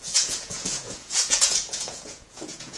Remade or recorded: remade